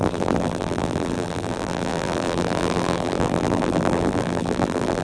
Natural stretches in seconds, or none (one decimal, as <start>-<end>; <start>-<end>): none